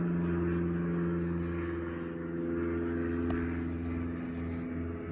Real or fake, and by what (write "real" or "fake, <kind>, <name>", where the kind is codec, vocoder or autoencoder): real